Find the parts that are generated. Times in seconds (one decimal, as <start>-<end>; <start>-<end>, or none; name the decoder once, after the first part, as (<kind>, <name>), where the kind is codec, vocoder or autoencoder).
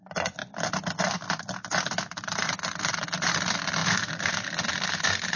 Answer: none